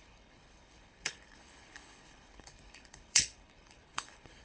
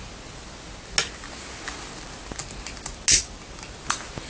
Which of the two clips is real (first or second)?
second